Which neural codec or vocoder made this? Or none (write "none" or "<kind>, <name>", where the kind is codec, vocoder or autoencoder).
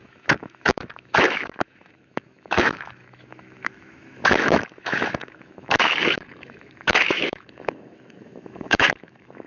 autoencoder, DAC-VAE